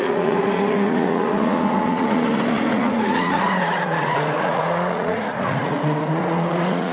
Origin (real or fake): fake